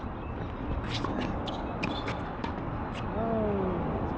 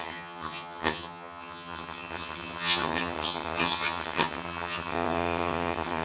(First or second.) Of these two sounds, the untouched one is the first